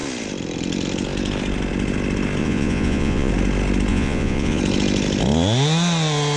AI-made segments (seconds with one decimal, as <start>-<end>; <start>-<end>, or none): 2.4-3.3; 3.9-4.6